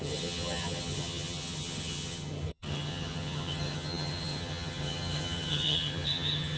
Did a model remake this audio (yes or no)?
yes